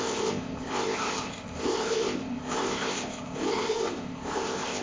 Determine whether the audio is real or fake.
fake